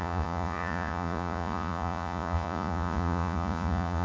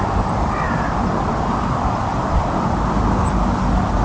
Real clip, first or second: second